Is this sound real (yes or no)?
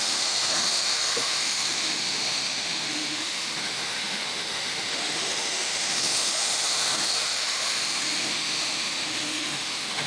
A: no